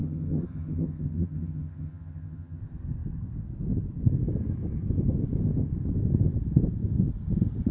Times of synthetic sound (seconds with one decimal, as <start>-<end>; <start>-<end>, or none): 0.0-2.6